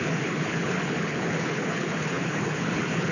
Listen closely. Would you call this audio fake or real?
fake